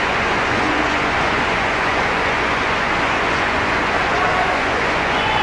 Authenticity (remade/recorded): remade